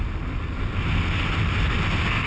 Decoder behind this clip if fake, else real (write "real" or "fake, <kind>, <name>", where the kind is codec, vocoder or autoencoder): real